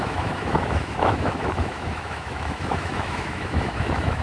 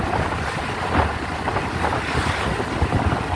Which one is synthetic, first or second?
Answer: first